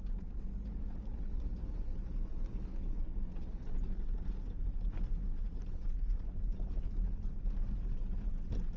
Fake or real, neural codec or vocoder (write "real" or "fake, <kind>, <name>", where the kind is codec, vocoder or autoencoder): real